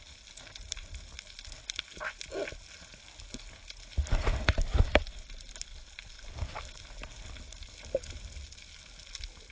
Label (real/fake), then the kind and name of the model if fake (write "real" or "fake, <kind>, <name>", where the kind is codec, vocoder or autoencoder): real